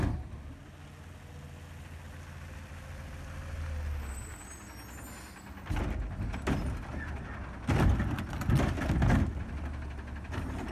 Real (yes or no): yes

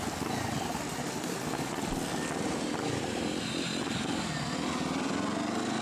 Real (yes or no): yes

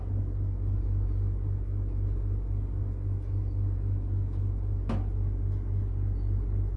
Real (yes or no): yes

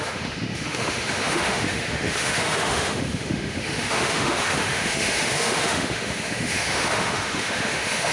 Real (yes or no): no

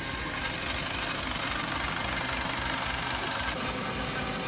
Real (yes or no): yes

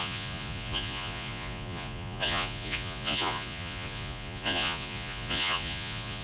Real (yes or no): no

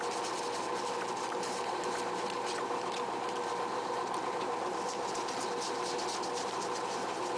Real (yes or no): yes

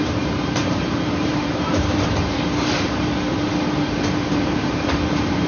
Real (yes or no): no